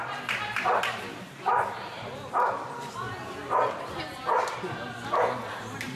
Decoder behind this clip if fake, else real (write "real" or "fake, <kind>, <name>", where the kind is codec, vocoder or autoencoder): real